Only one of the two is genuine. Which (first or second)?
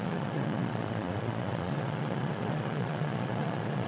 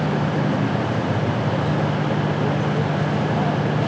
second